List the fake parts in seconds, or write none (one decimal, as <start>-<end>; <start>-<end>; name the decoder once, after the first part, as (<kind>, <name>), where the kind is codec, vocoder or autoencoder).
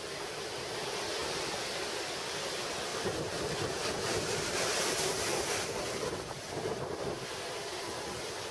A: none